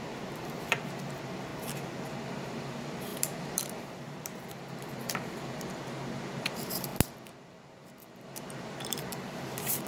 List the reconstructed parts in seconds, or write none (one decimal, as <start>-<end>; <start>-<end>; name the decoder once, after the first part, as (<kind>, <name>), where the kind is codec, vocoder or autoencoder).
0.0-1.5 (vocoder, BigVGAN v2); 2.3-6.9; 7.4-9.9